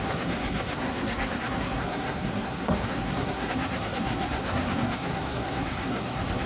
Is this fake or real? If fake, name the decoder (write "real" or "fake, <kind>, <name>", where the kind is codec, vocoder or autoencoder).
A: fake, codec, SNAC